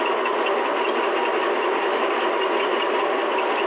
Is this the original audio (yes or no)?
yes